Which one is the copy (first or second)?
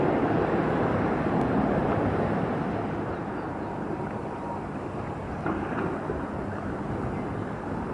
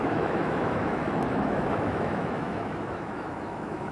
second